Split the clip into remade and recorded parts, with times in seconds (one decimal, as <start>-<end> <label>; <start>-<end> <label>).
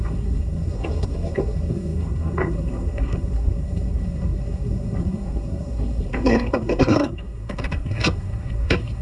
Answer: 0.0-9.0 remade